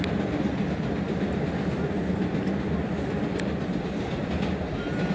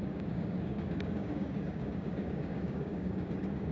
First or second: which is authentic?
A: first